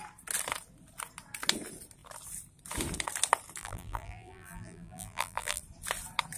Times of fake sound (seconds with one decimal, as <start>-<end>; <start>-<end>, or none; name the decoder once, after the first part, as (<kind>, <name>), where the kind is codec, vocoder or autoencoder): 3.6-5.6 (vocoder, BigVGAN v2)